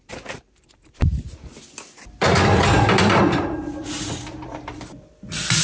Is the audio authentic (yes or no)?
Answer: no